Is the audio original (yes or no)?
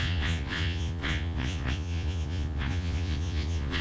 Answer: no